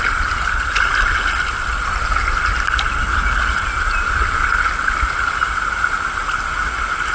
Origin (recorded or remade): recorded